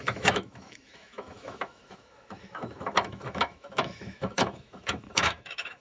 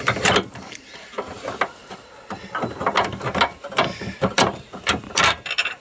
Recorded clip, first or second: second